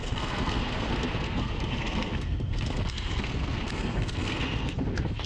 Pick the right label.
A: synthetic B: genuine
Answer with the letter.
A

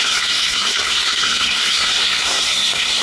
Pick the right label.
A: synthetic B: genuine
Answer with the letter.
A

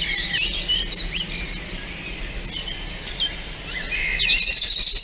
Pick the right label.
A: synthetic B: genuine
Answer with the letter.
B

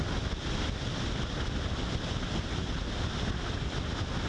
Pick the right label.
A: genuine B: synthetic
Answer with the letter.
A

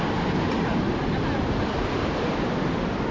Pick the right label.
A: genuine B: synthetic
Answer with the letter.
A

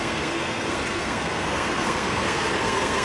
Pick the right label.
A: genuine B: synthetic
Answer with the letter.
B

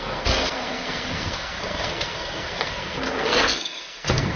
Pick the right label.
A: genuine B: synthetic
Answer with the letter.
B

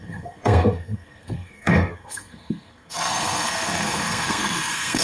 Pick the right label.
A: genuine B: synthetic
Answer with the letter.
B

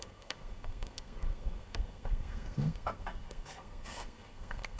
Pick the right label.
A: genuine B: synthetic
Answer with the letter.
B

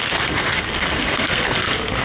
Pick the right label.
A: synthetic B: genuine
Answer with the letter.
A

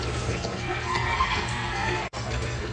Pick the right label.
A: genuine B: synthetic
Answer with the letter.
B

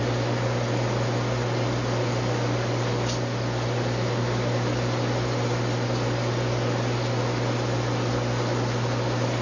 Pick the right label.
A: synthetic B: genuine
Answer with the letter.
B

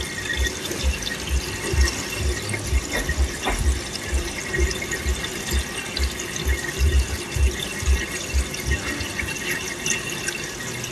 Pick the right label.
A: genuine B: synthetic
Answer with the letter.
A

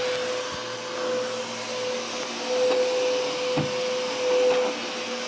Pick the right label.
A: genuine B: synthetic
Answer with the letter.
A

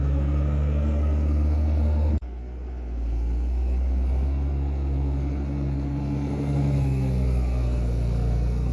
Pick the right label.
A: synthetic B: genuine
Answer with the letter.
A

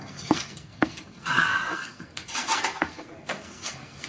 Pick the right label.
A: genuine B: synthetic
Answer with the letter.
B